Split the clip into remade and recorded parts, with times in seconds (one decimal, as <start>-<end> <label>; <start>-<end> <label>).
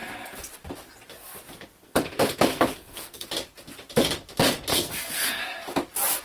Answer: 0.0-1.8 recorded; 1.8-3.3 remade; 3.3-4.7 recorded; 4.7-5.4 remade; 5.4-6.2 recorded